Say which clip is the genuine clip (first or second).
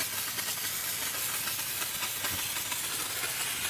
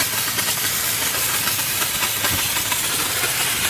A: first